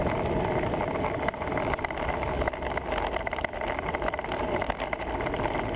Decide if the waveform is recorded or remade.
recorded